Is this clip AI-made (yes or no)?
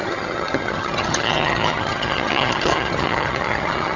yes